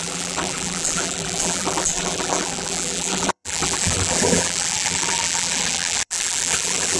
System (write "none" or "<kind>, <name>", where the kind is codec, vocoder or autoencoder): vocoder, BigVGAN v2